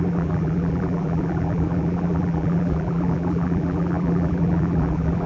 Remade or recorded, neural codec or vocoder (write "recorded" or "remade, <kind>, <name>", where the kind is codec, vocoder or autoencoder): remade, vocoder, BigVGAN v2